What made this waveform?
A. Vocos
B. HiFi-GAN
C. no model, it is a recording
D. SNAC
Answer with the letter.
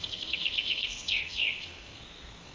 D